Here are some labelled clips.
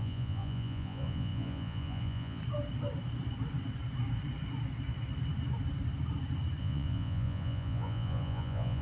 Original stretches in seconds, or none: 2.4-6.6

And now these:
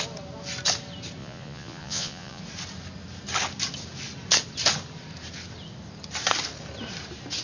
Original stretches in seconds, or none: 0.0-1.2; 2.4-7.4

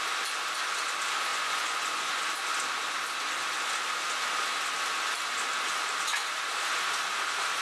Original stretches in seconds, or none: 0.0-1.3; 2.2-7.6

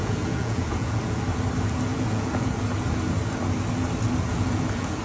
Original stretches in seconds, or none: 1.2-1.9; 3.0-4.3

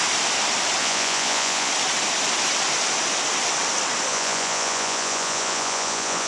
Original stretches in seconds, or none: 0.0-0.8; 1.7-4.1

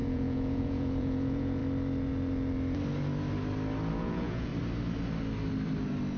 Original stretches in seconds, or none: 1.6-3.9; 4.5-6.2